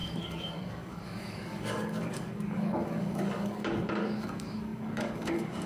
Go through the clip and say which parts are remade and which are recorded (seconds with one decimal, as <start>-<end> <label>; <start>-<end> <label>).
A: 0.0-5.7 remade